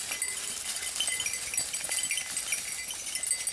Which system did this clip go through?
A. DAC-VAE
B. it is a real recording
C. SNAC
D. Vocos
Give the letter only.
B